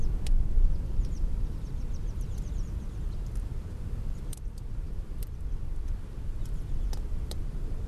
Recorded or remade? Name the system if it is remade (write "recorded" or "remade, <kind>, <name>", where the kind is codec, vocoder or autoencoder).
remade, vocoder, BigVGAN v2